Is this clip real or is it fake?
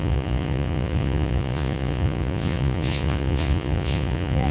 fake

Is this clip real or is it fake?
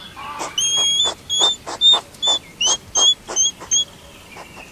real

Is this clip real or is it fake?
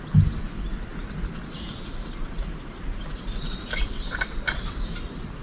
real